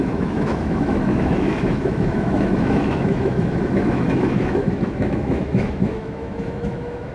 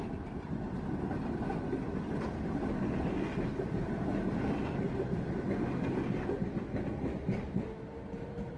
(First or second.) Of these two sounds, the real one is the second